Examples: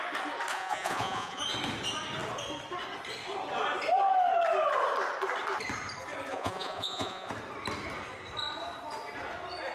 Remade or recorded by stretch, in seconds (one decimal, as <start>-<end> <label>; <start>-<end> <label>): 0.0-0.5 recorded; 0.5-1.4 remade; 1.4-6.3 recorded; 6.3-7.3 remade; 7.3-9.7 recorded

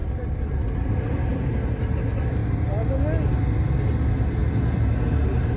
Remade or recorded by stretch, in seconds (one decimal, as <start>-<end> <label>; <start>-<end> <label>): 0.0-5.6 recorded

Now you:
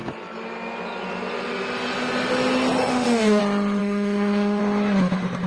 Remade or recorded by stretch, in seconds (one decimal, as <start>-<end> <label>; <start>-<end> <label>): 0.0-2.9 recorded; 2.9-3.4 remade; 3.4-3.8 recorded; 3.8-4.6 remade; 4.6-5.5 recorded

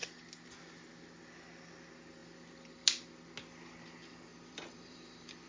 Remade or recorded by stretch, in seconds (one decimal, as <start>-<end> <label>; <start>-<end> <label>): 0.0-4.3 recorded; 4.3-5.5 remade

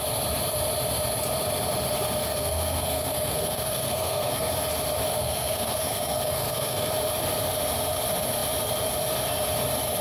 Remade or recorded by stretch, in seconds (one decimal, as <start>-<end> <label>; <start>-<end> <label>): 0.0-2.2 recorded; 2.2-4.5 remade; 4.5-5.1 recorded; 5.1-6.9 remade; 6.9-10.0 recorded